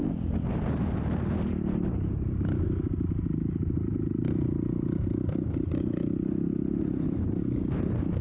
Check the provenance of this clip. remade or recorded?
recorded